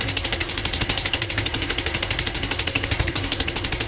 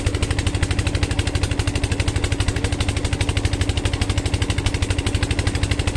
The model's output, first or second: first